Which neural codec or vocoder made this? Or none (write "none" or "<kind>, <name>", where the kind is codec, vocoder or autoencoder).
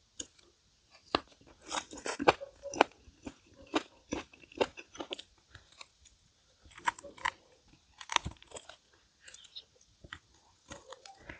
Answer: none